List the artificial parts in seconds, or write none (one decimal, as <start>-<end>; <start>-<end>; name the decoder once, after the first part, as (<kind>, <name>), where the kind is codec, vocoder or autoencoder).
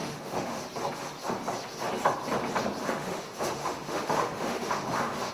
0.0-0.6 (autoencoder, DAC-VAE); 2.8-5.3